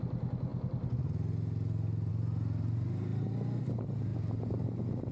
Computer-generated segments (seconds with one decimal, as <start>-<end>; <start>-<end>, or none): none

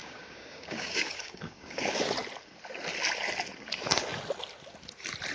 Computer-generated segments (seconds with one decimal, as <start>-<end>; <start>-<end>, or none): 0.0-2.1